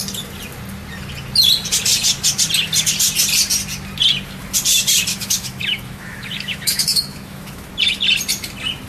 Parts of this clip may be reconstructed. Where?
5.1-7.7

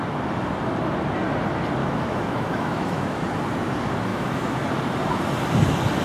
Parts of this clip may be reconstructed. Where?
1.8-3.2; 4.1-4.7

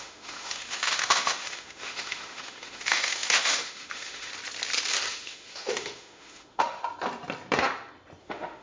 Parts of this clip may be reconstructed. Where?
0.0-4.3; 5.1-6.8; 8.2-8.6